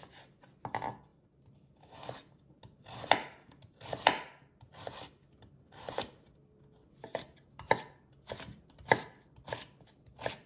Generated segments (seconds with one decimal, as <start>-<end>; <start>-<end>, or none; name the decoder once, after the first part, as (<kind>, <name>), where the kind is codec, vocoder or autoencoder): none